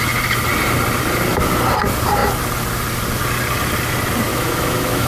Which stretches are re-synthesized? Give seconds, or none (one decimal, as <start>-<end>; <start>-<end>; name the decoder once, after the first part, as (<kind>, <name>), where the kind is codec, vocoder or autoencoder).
4.3-5.1 (autoencoder, DAC-VAE)